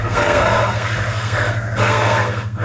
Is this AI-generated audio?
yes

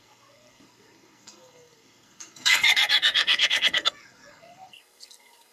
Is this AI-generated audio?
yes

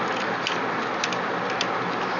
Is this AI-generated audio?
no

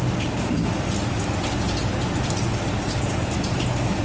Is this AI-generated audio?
no